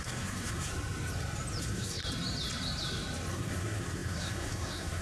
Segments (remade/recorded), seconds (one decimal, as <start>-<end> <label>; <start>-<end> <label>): 0.0-0.7 remade; 0.7-1.6 recorded; 1.6-2.0 remade; 2.0-3.3 recorded; 3.3-5.0 remade